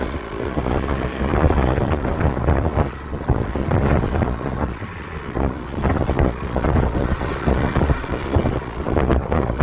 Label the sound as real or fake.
fake